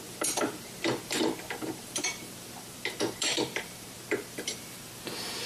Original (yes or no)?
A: no